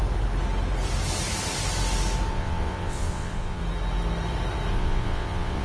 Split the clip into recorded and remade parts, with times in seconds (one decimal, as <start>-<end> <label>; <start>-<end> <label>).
0.0-2.3 recorded; 2.3-3.6 remade; 3.6-4.7 recorded; 4.7-5.6 remade